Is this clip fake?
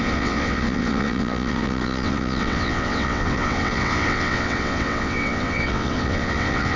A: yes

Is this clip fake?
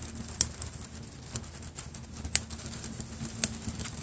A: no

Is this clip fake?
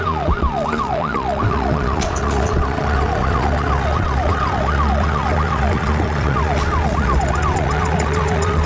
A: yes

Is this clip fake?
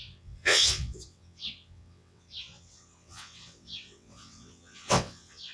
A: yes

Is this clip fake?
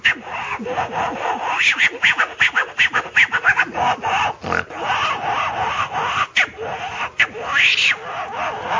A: no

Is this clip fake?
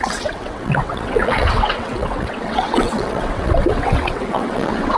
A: yes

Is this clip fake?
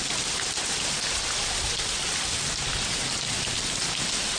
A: no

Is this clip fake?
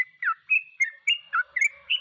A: no